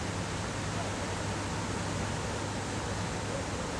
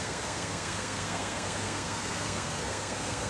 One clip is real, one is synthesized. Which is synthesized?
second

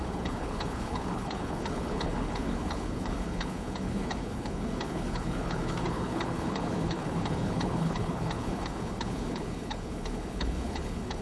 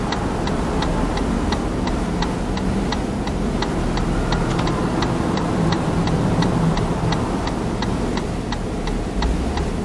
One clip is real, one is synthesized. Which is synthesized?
first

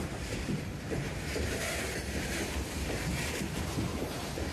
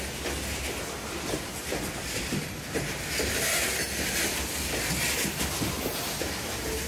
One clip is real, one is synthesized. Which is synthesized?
first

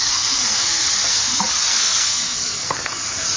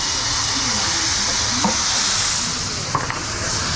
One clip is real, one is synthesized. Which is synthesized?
first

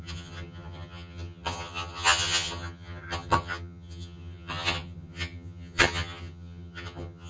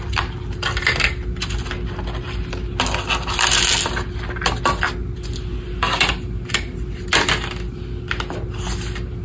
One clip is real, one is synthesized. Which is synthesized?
first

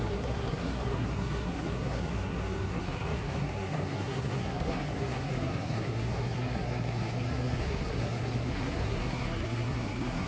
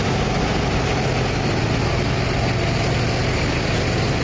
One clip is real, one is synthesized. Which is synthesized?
first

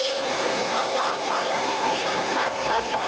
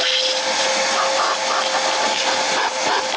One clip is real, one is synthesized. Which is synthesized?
first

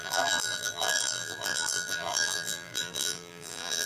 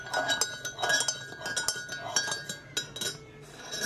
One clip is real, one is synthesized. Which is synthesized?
first